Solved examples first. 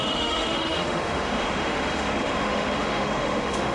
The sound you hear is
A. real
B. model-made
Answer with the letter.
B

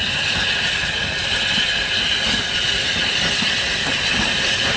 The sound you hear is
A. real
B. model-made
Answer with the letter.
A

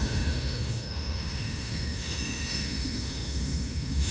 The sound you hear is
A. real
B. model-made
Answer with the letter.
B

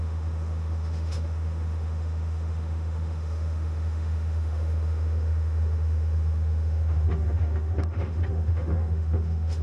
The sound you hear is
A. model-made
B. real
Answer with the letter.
A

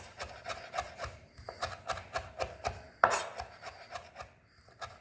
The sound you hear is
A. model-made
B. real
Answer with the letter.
B